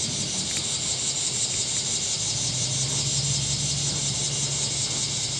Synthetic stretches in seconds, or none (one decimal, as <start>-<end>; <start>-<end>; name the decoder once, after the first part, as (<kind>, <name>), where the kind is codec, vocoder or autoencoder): none